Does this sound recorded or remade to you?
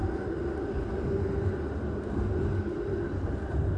recorded